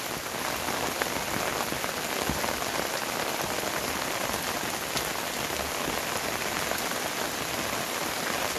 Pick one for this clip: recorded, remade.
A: recorded